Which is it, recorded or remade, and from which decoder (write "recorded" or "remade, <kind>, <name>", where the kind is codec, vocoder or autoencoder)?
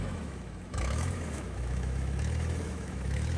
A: remade, autoencoder, DAC-VAE